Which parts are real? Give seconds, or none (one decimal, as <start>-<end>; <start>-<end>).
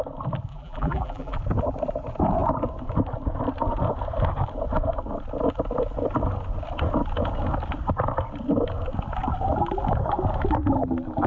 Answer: 0.0-0.5; 1.4-11.3